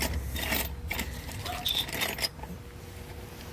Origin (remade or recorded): recorded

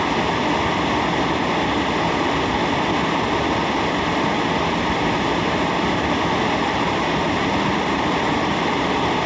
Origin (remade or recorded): recorded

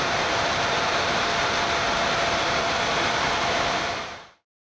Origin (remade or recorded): remade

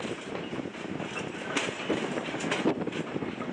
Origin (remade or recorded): recorded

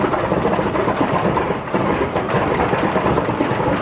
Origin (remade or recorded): recorded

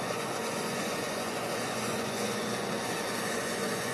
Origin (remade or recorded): remade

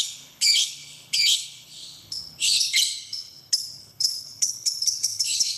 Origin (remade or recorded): remade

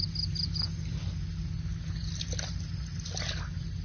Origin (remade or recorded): recorded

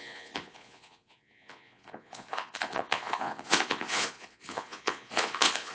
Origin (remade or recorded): remade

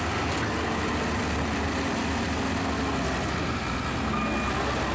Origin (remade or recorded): recorded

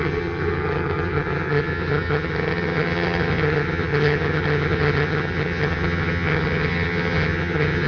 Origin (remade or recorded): remade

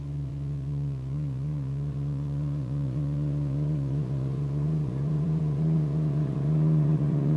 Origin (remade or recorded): remade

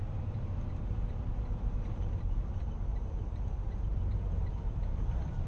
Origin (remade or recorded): remade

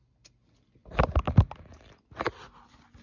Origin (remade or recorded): recorded